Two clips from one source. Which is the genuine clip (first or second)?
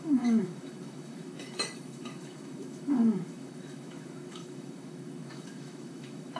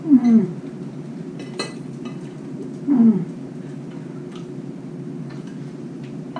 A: second